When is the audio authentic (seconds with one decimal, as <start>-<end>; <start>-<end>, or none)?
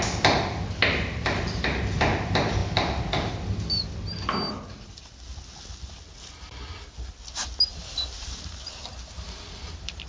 0.0-10.1